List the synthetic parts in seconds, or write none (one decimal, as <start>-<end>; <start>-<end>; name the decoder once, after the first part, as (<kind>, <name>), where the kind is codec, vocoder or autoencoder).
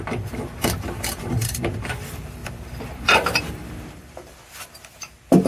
0.0-5.5 (vocoder, BigVGAN v2)